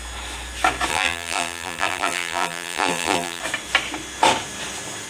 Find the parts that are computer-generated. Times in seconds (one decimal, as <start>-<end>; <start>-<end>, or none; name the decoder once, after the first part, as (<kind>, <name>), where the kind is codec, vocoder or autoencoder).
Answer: 0.9-3.4 (vocoder, BigVGAN v2)